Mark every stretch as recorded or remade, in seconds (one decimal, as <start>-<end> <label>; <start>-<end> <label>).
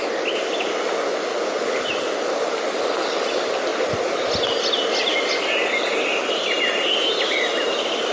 0.0-1.3 recorded; 1.3-1.9 remade; 1.9-8.1 recorded